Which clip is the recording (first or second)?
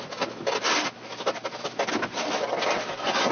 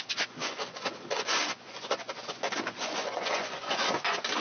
first